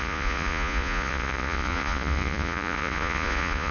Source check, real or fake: fake